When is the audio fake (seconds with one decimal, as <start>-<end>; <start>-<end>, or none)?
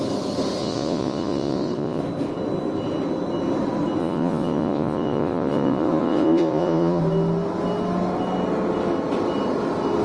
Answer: 0.6-2.0; 4.0-7.0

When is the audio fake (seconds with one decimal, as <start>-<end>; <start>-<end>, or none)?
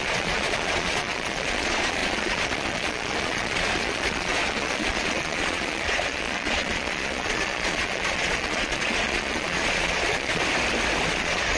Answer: 0.0-10.4; 11.1-11.6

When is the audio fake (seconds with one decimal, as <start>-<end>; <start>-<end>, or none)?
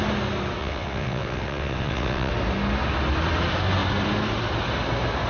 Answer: 0.6-2.3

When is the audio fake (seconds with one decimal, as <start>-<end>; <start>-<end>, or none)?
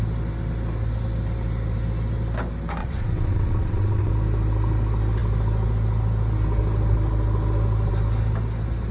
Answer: 2.8-4.1